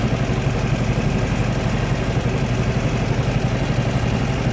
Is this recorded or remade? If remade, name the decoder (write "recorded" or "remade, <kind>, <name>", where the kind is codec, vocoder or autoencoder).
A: recorded